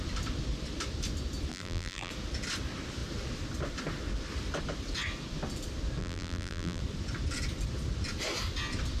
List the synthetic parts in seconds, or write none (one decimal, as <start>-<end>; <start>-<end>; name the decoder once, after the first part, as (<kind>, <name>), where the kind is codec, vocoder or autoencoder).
1.5-2.1 (vocoder, BigVGAN v2); 6.0-6.8